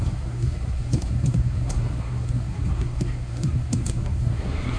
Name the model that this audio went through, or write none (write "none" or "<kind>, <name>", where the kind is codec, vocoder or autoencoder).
codec, SNAC